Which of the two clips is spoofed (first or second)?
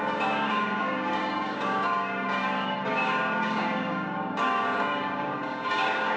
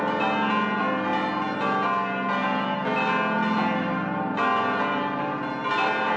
first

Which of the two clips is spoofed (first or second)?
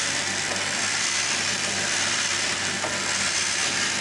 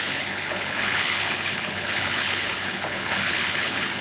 second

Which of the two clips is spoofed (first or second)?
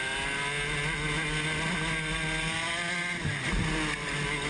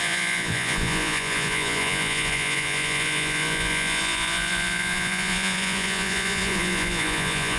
second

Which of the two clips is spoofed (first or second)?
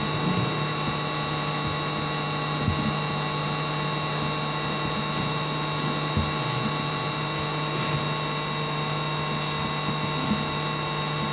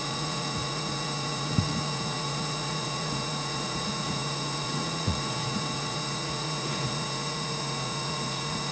second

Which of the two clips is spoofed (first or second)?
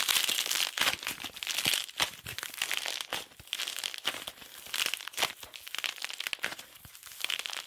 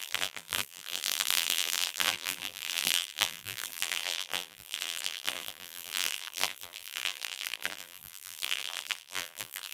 second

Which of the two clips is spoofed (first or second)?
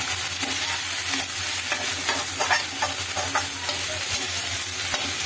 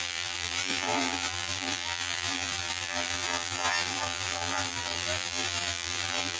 second